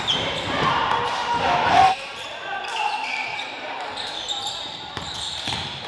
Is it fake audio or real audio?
fake